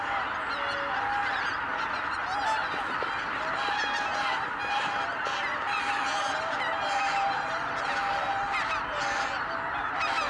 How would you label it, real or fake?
real